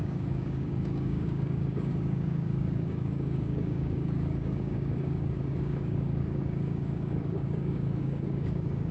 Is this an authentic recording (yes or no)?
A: no